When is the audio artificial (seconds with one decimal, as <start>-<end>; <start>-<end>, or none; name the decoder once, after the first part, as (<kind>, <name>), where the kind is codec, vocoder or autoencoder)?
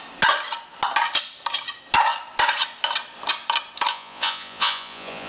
3.9-5.3 (vocoder, Vocos)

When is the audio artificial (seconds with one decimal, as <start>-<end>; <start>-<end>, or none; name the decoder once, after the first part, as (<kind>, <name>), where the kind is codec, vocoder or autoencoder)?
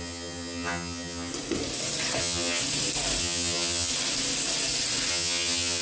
0.0-1.3 (vocoder, HiFi-GAN); 2.2-2.6; 3.2-3.9; 5.1-5.8